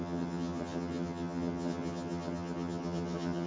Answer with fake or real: fake